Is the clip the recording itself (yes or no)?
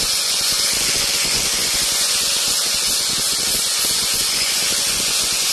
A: no